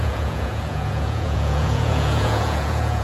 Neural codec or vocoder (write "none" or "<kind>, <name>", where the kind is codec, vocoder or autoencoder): vocoder, Vocos